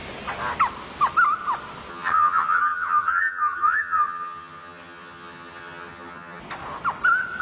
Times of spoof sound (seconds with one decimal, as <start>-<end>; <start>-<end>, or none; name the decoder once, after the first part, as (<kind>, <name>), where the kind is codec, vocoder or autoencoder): 1.9-6.4 (vocoder, HiFi-GAN)